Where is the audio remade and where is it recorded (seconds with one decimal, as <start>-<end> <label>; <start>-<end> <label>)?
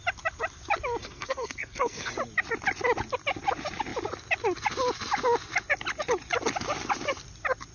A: 0.0-1.0 recorded; 1.0-2.1 remade; 2.1-7.7 recorded